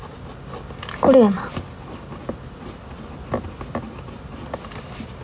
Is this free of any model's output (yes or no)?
yes